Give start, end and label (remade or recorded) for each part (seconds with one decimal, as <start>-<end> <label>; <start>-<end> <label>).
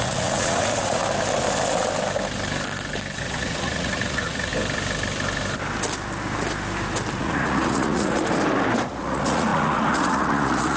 0.0-1.0 remade; 1.0-3.2 recorded; 3.2-4.5 remade; 4.5-7.2 recorded; 7.2-8.2 remade; 8.2-8.9 recorded; 8.9-10.8 remade